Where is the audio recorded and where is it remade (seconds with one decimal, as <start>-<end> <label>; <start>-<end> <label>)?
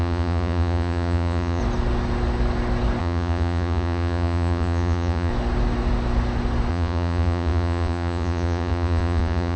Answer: 0.0-1.6 remade; 1.6-3.0 recorded; 3.0-5.3 remade; 5.3-6.7 recorded; 6.7-9.6 remade